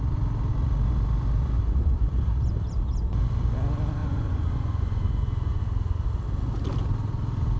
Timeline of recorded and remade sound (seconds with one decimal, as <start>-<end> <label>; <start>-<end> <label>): 0.0-4.0 recorded; 4.0-5.6 remade; 5.6-7.6 recorded